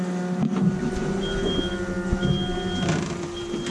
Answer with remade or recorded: recorded